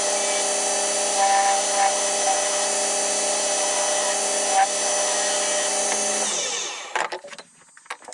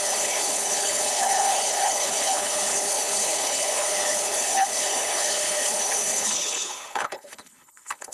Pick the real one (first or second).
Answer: first